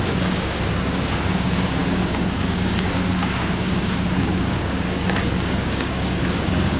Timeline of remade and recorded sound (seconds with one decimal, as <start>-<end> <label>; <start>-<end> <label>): 0.0-6.8 remade